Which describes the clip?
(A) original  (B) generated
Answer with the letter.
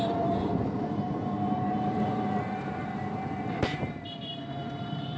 B